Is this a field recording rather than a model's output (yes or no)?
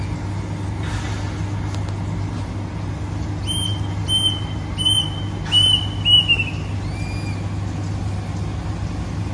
yes